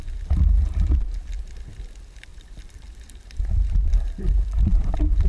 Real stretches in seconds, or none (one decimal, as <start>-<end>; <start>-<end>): 0.0-2.3